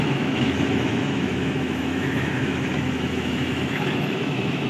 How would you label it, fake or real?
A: fake